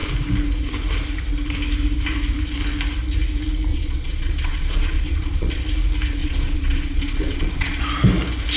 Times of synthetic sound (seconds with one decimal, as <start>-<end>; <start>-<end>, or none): 3.7-5.6; 6.2-7.8